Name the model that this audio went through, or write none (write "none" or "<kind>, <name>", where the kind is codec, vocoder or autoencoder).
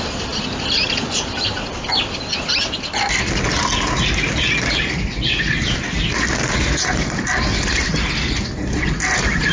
none